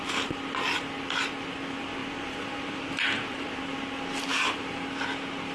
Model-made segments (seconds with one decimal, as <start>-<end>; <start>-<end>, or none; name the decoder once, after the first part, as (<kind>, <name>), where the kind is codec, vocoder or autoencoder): 2.0-3.6 (vocoder, BigVGAN v2); 4.3-4.8